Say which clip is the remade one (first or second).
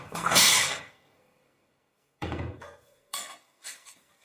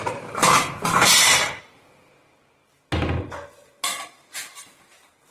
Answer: first